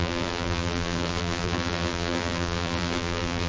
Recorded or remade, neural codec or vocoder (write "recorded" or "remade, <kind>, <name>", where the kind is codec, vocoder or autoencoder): remade, vocoder, BigVGAN v2